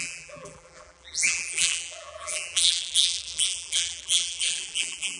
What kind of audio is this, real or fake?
fake